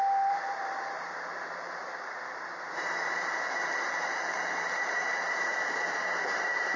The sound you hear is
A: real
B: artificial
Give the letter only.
B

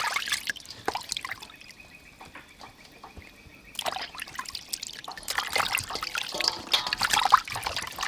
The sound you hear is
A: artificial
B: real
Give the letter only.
B